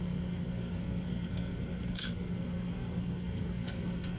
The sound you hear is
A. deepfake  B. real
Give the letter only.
A